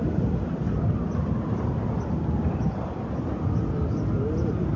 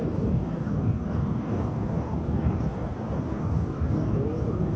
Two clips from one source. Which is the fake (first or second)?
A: second